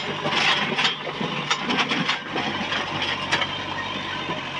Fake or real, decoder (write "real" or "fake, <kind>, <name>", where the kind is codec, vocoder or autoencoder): real